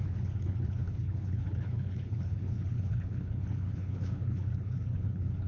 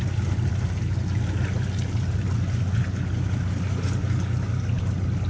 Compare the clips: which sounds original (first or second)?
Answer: second